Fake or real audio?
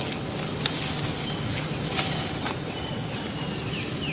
real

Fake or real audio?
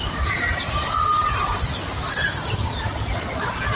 real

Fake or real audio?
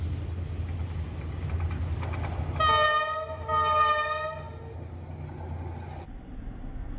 real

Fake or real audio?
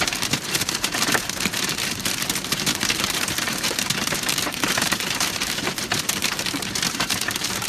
fake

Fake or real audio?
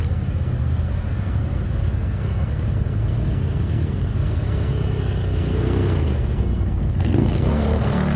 fake